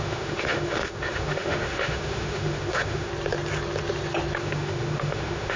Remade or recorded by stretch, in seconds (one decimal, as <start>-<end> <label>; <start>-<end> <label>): 0.0-3.1 remade; 3.1-4.4 recorded; 4.4-5.6 remade